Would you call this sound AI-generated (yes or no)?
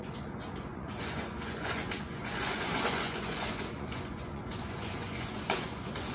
yes